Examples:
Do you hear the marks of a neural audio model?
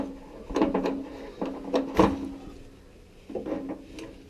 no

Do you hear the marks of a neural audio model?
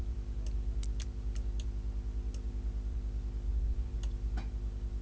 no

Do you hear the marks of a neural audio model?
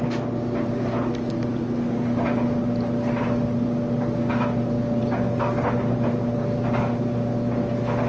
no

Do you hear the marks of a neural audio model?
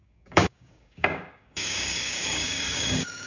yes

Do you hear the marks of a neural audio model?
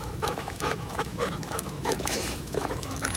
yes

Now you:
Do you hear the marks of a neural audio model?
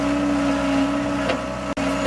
no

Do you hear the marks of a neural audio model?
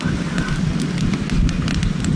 no